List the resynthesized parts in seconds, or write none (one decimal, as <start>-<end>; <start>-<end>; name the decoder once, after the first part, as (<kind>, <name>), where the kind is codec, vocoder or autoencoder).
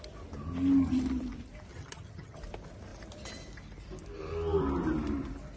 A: 1.7-2.4 (vocoder, HiFi-GAN)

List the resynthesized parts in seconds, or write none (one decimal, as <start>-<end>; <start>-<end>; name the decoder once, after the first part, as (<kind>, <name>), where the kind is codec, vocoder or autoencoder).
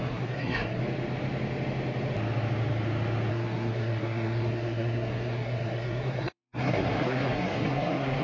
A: 0.0-0.8 (codec, SNAC); 3.3-8.2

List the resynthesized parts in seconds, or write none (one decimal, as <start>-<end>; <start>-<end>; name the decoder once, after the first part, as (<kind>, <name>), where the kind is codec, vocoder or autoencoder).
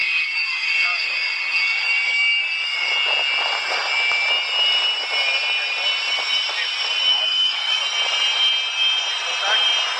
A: 0.0-2.9 (codec, DAC); 7.1-7.8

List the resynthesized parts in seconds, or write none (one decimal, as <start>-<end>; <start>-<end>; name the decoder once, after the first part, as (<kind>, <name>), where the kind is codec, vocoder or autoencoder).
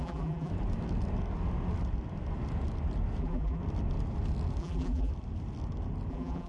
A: 0.0-0.5 (vocoder, BigVGAN v2); 3.2-3.6; 4.6-5.1; 6.1-6.5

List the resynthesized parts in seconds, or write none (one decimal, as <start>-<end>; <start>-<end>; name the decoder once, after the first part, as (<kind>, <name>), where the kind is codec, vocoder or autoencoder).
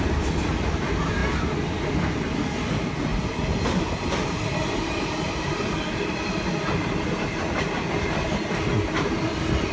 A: 0.0-1.2 (vocoder, BigVGAN v2); 2.5-8.7